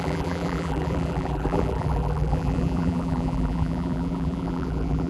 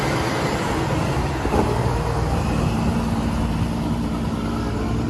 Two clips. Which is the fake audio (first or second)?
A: first